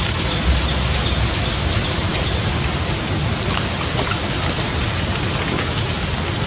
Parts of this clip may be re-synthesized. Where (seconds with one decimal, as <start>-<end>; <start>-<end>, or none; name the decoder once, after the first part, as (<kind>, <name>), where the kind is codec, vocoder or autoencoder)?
none